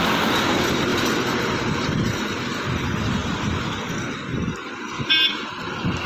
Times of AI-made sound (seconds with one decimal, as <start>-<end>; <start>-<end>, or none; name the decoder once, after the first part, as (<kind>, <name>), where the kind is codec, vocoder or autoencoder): none